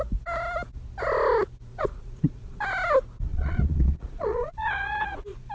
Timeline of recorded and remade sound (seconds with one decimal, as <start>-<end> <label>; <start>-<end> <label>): 0.0-1.7 recorded; 1.7-2.6 remade; 2.6-3.3 recorded; 3.3-5.5 remade